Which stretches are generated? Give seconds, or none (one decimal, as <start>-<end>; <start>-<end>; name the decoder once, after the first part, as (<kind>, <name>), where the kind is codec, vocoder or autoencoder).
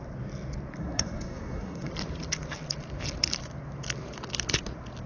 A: 0.8-1.9 (codec, SNAC)